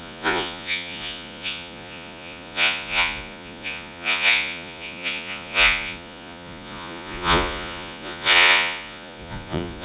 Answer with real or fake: fake